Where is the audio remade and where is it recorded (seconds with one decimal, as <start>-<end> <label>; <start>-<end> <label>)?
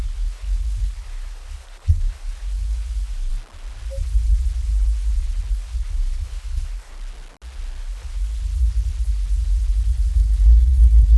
0.0-3.3 remade; 3.3-5.5 recorded; 5.5-6.9 remade; 6.9-7.8 recorded; 7.8-8.3 remade; 8.3-10.1 recorded; 10.1-11.2 remade